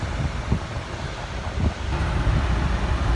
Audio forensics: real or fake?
real